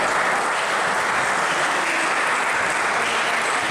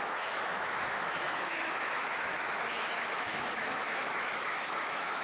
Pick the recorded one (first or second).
first